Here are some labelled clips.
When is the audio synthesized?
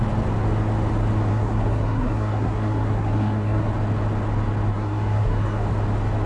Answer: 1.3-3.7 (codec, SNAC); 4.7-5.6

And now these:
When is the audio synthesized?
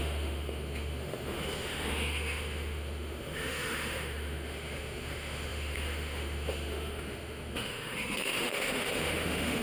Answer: 0.0-9.6 (autoencoder, DAC-VAE)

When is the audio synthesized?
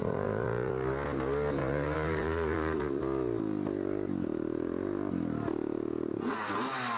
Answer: 0.0-0.7 (vocoder, Vocos); 1.6-3.0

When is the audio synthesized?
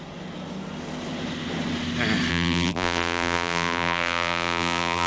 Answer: 2.3-5.1 (vocoder, BigVGAN v2)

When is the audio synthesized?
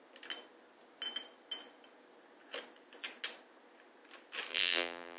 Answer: 4.5-5.2 (vocoder, BigVGAN v2)